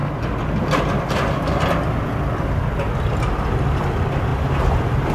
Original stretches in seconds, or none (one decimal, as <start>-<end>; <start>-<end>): 0.0-5.1